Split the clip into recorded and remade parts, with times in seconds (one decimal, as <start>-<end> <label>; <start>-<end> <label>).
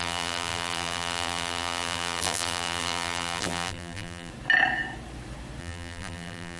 0.0-4.3 remade; 4.3-5.6 recorded; 5.6-6.6 remade